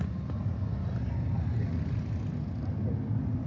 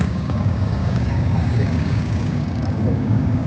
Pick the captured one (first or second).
first